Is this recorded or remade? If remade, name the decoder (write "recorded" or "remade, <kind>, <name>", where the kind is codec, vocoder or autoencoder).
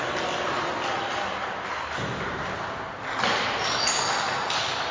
recorded